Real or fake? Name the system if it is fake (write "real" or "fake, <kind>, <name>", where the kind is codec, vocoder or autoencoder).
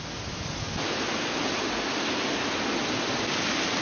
real